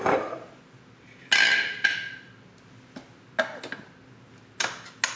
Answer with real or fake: real